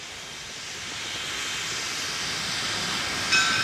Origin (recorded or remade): recorded